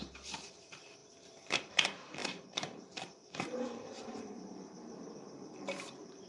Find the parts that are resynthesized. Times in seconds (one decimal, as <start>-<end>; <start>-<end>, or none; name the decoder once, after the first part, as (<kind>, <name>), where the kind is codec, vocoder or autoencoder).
0.0-6.3 (vocoder, BigVGAN v2)